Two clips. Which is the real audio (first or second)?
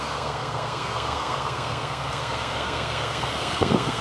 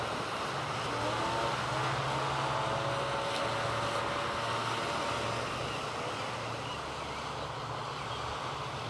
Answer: second